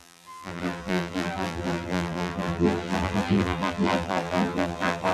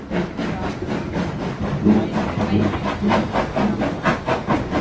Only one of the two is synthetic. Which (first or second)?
first